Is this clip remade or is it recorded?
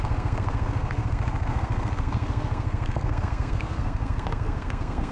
remade